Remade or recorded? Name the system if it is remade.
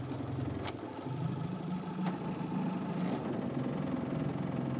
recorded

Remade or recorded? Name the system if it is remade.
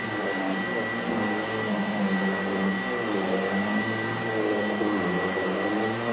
recorded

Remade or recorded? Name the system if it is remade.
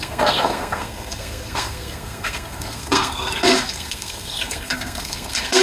remade, codec, SNAC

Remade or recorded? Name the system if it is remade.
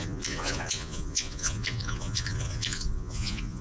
remade, vocoder, Vocos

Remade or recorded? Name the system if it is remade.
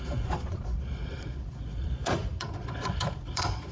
remade, vocoder, Vocos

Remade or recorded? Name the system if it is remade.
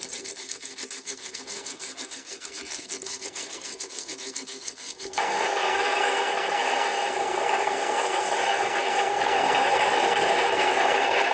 remade, codec, SNAC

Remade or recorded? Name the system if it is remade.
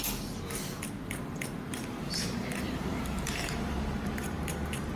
remade, vocoder, BigVGAN v2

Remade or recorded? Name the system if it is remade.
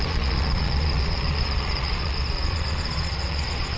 remade, vocoder, Vocos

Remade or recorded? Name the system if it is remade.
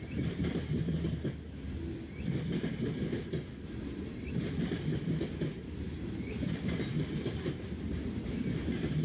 recorded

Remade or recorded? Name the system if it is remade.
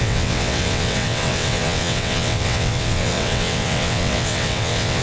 remade, vocoder, WaveNeXt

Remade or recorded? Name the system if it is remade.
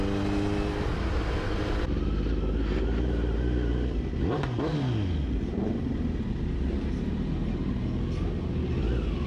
recorded